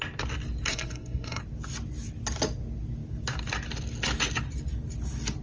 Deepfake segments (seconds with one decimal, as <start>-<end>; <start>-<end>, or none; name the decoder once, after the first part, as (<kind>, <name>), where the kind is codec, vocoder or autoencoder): 0.7-1.4 (codec, SNAC)